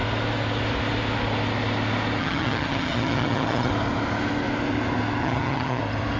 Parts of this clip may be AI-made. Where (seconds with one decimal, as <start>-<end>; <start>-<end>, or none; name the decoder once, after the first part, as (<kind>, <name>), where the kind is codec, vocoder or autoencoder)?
2.2-3.7 (vocoder, HiFi-GAN); 5.2-5.8